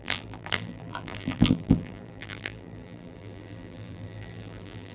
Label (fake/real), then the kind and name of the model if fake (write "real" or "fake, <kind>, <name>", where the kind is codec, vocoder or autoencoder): fake, vocoder, BigVGAN v2